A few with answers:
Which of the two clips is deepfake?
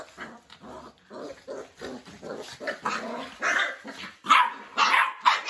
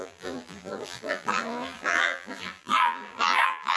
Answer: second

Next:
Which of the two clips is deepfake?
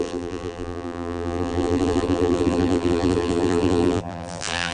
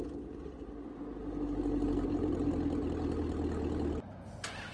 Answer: first